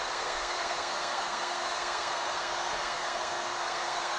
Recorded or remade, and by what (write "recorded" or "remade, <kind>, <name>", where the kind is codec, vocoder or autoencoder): remade, codec, SNAC